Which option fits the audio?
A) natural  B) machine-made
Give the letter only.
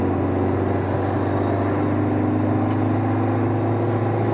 A